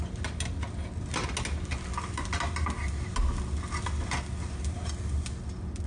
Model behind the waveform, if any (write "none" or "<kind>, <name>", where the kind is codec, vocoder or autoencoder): none